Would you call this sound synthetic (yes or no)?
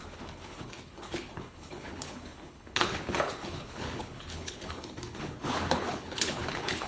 yes